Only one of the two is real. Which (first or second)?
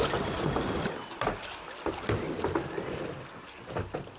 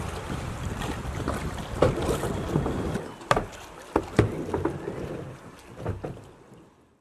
second